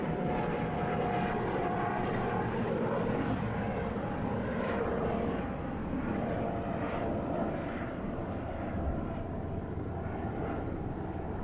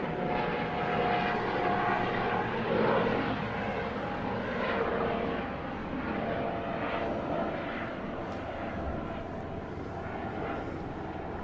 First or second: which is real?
second